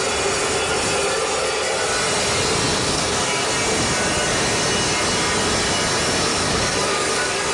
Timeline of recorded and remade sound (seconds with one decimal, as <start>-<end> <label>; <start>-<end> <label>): 0.0-2.7 recorded; 2.7-3.5 remade; 3.5-6.3 recorded; 6.3-7.5 remade